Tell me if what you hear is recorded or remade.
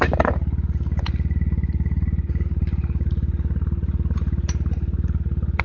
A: recorded